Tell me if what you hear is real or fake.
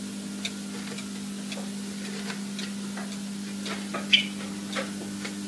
real